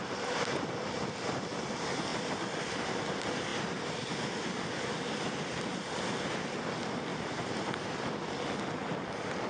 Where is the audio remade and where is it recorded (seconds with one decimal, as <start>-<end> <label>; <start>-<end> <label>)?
0.0-7.1 recorded; 7.1-7.7 remade; 7.7-9.5 recorded